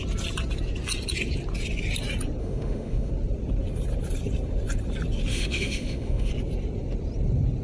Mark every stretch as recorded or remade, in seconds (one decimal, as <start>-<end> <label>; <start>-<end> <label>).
0.0-2.4 recorded; 2.4-3.1 remade; 3.1-5.3 recorded; 5.3-6.3 remade; 6.3-7.6 recorded